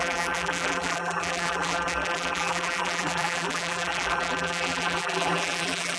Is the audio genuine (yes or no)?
no